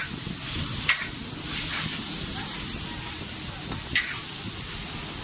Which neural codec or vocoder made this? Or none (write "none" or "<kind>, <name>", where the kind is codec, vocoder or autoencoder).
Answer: none